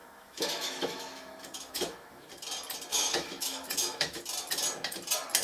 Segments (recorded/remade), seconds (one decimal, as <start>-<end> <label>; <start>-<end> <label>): 0.0-2.3 remade; 2.3-2.9 recorded; 2.9-4.2 remade; 4.2-5.4 recorded